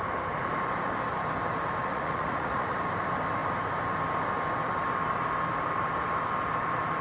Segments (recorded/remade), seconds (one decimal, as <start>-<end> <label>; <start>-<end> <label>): 0.0-1.8 recorded; 1.8-2.8 remade; 2.8-7.0 recorded